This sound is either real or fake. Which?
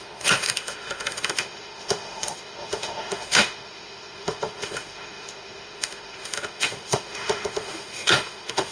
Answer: fake